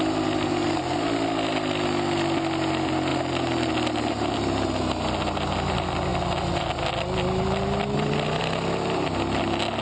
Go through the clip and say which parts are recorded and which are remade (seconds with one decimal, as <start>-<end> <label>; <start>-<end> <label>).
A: 0.0-9.8 recorded